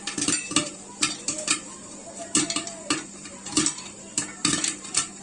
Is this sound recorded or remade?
remade